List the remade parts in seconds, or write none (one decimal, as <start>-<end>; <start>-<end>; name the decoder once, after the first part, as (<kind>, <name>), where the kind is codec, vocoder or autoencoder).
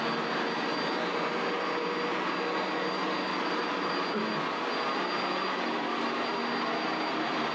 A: 3.3-3.9 (vocoder, BigVGAN v2)